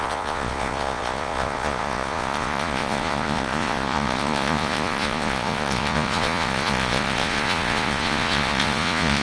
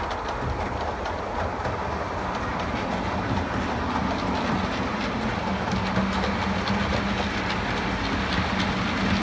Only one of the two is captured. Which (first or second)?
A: second